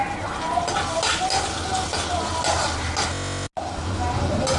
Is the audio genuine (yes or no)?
yes